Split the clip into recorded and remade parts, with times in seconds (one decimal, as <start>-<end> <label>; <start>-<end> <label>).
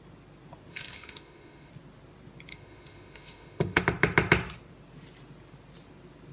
0.0-0.7 recorded; 0.7-1.7 remade; 1.7-2.5 recorded; 2.5-3.8 remade; 3.8-6.3 recorded